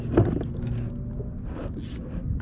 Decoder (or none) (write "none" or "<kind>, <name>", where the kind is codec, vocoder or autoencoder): none